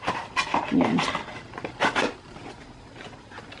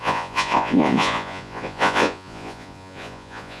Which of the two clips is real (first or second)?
first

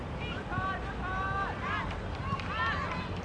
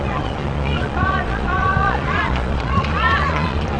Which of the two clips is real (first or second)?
first